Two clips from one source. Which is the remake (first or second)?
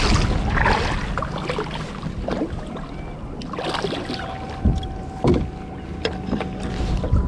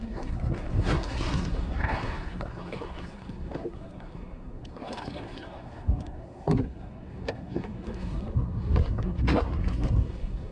second